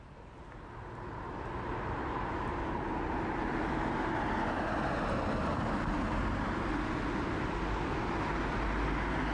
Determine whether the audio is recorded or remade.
recorded